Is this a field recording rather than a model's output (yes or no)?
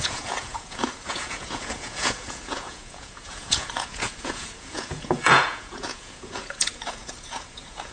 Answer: no